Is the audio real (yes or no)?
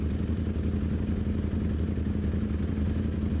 yes